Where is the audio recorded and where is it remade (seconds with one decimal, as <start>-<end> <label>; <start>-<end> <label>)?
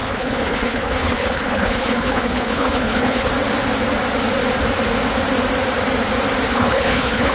0.0-3.3 remade; 3.3-6.5 recorded; 6.5-7.3 remade